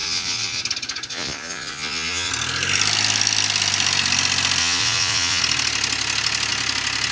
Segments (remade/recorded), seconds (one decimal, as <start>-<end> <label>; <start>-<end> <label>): 0.0-0.6 remade; 0.6-1.1 recorded; 1.1-2.3 remade; 2.3-4.6 recorded; 4.6-5.4 remade; 5.4-7.1 recorded